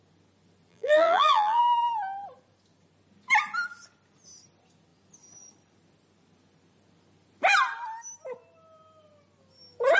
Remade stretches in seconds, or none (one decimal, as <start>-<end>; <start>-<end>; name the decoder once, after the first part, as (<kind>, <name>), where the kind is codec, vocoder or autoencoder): 0.7-1.6 (vocoder, BigVGAN v2)